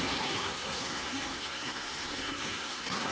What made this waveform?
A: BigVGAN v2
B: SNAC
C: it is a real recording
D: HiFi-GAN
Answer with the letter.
B